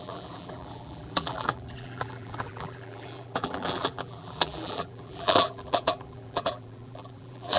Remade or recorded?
remade